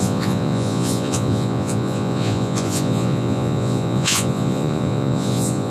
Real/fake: fake